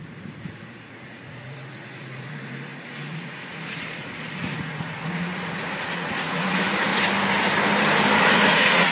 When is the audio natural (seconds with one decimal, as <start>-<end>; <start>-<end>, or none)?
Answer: 6.9-8.2